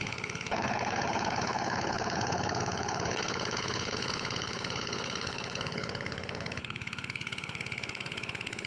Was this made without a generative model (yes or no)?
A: no